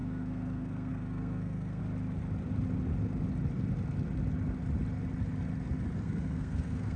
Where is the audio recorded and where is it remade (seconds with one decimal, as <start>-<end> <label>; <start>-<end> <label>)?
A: 0.0-1.8 remade; 1.8-6.0 recorded; 6.0-7.0 remade